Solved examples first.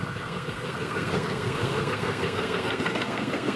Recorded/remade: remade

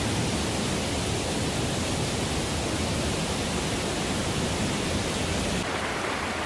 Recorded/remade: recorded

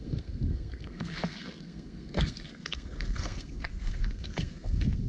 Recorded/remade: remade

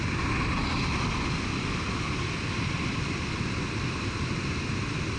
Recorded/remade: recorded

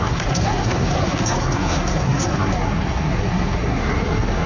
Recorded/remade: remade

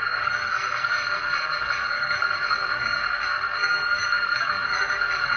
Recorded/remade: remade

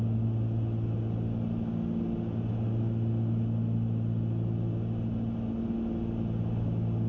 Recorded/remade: recorded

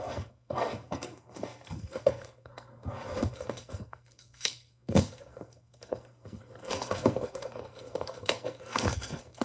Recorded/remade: remade